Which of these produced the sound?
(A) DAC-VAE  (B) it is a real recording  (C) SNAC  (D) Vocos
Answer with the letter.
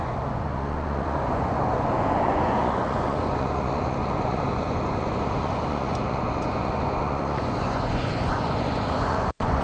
D